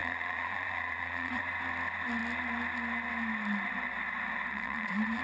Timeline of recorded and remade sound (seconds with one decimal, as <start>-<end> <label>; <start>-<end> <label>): 0.0-1.4 remade; 1.4-4.5 recorded; 4.5-5.2 remade